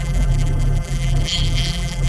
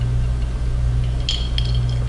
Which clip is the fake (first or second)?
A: first